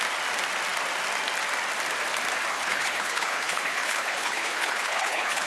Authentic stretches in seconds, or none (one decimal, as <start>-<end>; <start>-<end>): 0.0-2.5